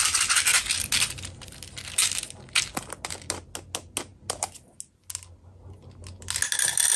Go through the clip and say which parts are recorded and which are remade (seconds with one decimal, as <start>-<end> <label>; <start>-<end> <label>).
0.0-7.0 recorded